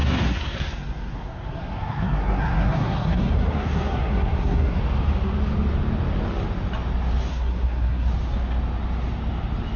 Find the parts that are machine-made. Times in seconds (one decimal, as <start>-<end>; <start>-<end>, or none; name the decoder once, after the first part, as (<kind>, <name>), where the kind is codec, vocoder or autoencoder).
0.0-4.8 (codec, SNAC); 7.3-8.1